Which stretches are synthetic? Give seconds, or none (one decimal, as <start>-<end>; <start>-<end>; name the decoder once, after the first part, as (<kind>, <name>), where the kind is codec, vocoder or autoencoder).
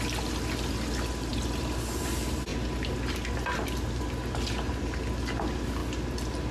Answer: none